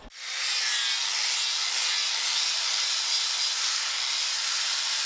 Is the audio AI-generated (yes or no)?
no